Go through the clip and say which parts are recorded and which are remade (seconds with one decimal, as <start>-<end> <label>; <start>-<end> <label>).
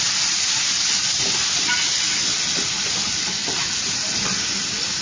0.0-5.0 recorded